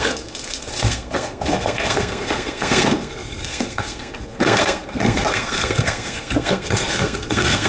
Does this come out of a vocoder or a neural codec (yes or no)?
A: yes